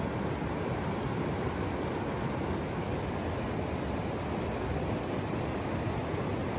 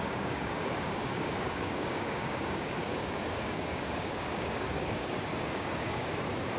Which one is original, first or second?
first